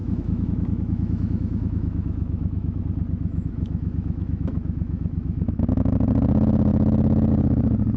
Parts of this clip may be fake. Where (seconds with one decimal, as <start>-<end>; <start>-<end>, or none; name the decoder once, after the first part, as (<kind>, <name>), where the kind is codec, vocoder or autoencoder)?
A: 0.0-2.8 (autoencoder, DAC-VAE); 3.3-5.9; 6.7-7.3